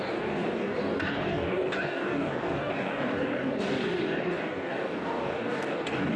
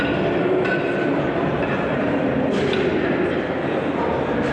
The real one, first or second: second